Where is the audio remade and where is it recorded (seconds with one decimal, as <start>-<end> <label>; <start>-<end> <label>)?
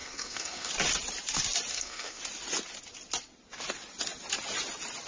0.0-0.7 remade; 0.7-1.7 recorded; 1.7-2.2 remade; 2.2-5.1 recorded